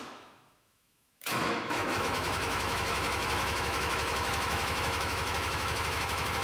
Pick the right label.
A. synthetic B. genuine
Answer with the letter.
A